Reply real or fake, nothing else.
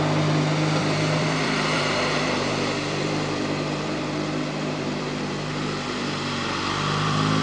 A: fake